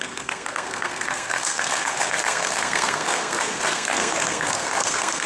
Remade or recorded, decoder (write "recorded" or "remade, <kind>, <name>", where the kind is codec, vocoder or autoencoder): remade, codec, SNAC